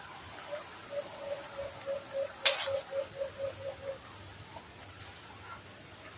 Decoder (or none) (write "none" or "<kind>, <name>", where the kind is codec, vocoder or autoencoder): none